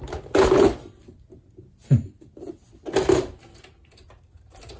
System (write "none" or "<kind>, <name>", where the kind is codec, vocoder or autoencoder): none